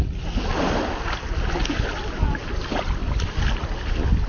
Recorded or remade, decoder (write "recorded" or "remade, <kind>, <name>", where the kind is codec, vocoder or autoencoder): recorded